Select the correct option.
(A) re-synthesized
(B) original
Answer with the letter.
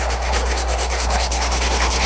A